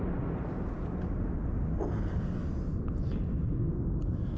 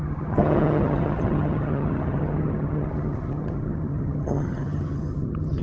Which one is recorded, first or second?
first